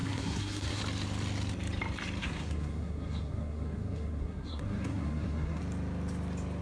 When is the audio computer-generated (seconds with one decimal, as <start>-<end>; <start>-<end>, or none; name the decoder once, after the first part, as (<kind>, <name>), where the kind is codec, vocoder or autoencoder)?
0.0-0.8 (codec, SNAC); 2.2-5.6